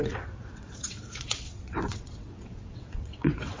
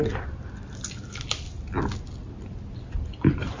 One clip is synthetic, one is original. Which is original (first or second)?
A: second